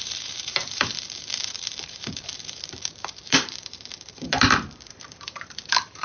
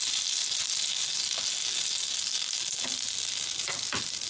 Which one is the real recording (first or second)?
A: second